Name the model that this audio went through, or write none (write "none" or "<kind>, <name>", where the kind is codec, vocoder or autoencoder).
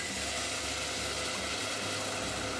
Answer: none